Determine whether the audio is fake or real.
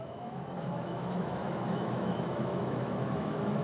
fake